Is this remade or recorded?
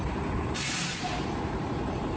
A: remade